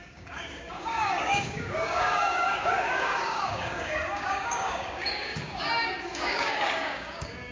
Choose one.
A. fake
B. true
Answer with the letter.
A